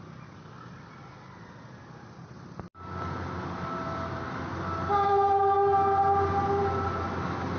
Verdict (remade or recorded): recorded